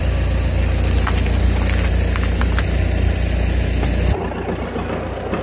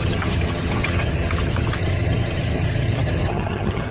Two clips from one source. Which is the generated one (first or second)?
second